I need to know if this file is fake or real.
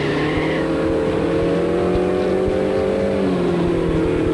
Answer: real